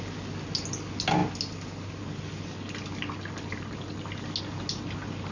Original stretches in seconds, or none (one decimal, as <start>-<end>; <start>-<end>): 0.0-5.3

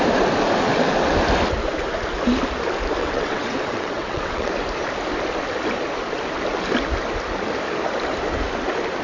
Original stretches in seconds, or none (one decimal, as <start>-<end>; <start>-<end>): 0.0-3.0; 4.5-9.0

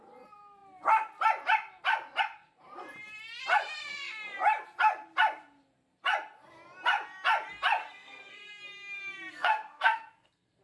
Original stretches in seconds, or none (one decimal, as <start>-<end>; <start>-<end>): 0.0-7.8; 8.6-9.3